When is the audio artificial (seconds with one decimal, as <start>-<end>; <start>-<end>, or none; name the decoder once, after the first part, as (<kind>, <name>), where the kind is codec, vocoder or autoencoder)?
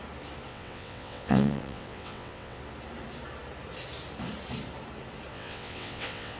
0.5-2.6 (vocoder, WaveNeXt); 5.3-6.4